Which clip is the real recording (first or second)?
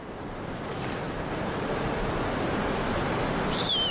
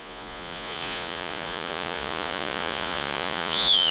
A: first